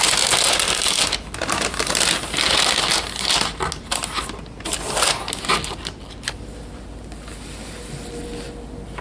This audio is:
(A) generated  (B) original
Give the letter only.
B